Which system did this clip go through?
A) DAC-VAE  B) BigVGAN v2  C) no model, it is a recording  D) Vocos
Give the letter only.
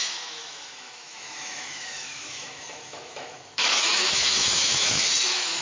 A